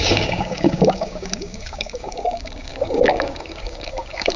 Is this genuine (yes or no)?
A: no